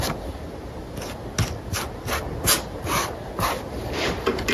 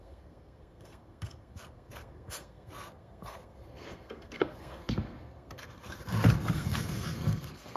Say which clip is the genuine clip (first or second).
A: first